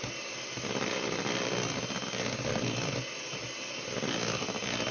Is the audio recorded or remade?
recorded